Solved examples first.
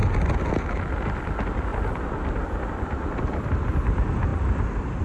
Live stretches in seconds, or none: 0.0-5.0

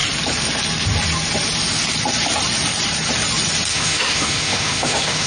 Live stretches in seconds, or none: 0.0-3.7

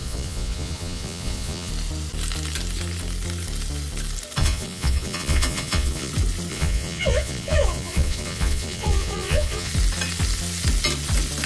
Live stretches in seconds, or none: 1.7-4.4; 6.1-6.5; 9.7-11.5

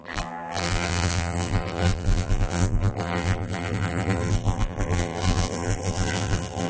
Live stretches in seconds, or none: none

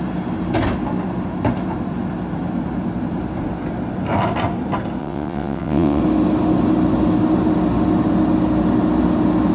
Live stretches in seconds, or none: 0.0-5.0; 6.0-9.5

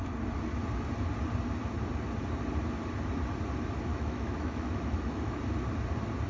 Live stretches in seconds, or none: 0.0-3.9; 5.4-6.3

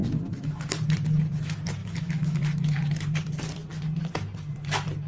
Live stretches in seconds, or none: 0.0-1.8; 2.4-5.1

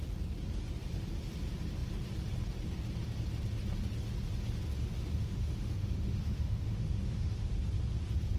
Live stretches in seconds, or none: 0.0-5.2; 7.5-8.4